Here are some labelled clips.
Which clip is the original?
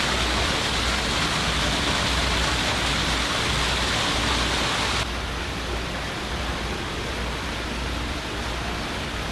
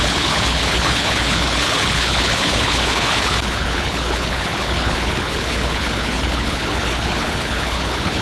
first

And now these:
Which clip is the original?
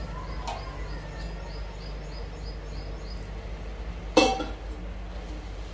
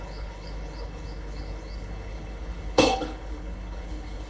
first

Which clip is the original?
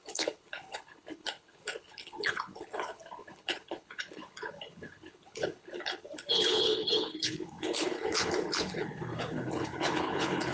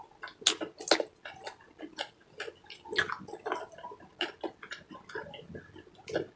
second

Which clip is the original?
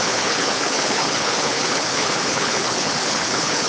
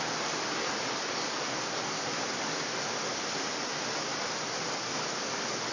second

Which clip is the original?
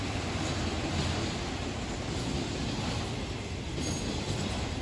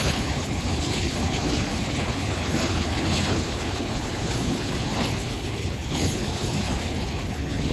first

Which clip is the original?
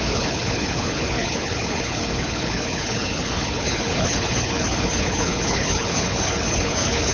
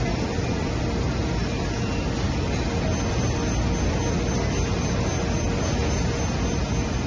second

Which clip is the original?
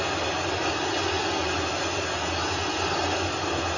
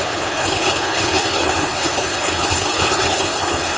first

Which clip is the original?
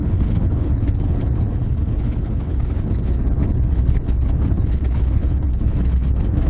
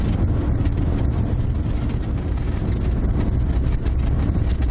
second